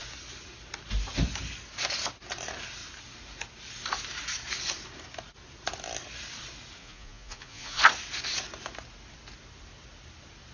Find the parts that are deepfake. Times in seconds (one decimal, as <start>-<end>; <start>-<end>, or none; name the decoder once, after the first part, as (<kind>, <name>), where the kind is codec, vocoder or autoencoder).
6.8-7.8 (vocoder, Vocos)